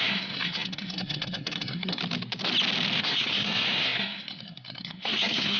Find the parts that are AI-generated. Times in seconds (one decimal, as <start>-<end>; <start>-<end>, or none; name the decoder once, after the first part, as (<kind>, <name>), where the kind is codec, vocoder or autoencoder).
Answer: 0.0-2.0 (codec, SNAC); 3.0-5.6